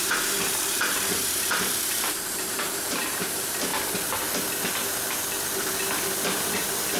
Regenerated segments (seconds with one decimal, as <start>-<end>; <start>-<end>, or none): 0.0-3.7